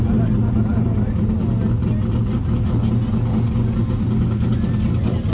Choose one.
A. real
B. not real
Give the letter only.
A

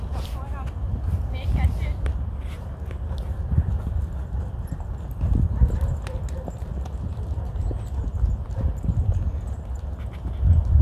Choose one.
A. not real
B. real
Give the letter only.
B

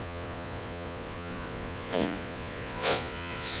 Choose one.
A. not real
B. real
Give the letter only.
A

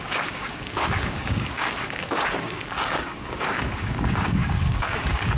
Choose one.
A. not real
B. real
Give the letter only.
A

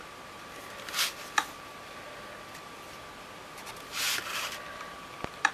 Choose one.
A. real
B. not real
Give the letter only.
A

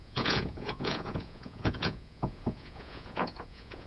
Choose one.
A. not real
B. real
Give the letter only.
A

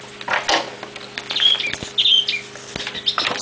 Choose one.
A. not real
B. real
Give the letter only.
B